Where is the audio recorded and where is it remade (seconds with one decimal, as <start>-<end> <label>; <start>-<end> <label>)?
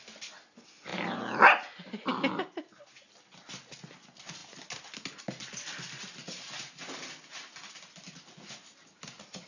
0.0-9.5 recorded